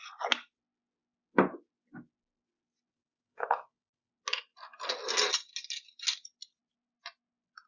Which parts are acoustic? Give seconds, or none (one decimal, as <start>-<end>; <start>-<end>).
0.0-2.9; 4.1-7.7